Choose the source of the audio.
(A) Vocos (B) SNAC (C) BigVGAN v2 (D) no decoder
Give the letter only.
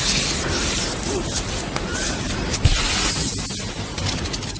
D